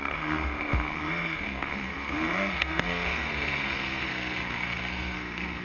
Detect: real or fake fake